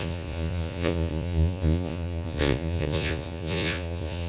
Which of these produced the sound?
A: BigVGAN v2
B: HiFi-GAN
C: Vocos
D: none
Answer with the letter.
C